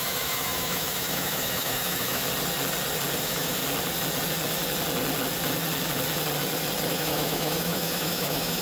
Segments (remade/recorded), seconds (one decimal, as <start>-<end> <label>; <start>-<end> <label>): 0.0-2.2 remade; 2.2-3.2 recorded; 3.2-3.6 remade; 3.6-6.9 recorded; 6.9-8.6 remade